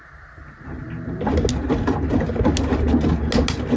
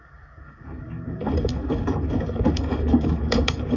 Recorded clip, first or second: first